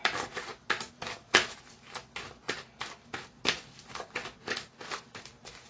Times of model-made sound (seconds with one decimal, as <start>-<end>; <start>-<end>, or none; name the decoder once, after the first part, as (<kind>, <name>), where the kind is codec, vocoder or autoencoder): none